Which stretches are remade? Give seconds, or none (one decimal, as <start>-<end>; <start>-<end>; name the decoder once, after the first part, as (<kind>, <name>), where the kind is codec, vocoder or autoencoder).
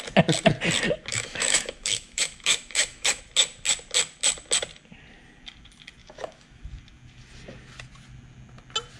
1.1-3.2 (autoencoder, DAC-VAE); 6.0-6.6